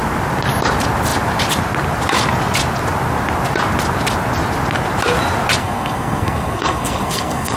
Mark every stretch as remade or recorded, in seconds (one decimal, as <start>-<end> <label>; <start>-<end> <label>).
0.0-5.6 recorded; 5.6-7.6 remade